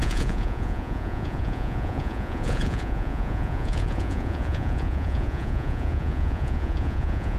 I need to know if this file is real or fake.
fake